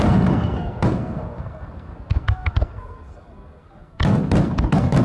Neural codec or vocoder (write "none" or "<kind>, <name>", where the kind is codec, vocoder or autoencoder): codec, SNAC